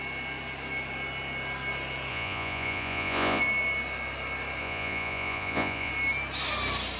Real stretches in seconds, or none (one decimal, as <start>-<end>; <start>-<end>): 0.0-2.1; 3.4-4.6; 5.9-7.0